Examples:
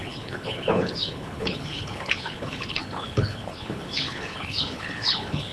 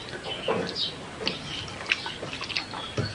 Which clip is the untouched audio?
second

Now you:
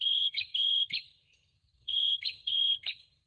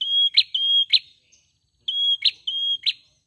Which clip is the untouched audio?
second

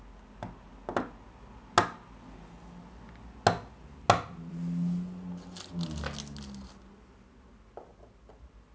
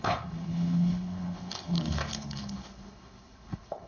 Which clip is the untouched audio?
first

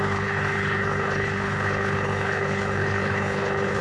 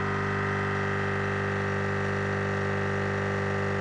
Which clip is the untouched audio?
second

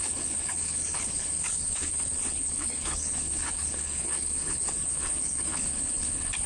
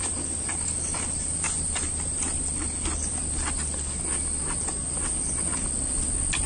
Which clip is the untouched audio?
second